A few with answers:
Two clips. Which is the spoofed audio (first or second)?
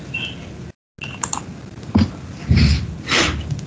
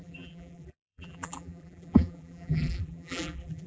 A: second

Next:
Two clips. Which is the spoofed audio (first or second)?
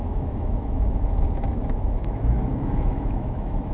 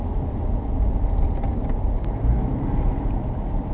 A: first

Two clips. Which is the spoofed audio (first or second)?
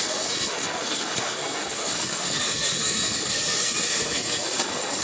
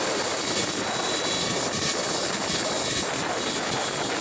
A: first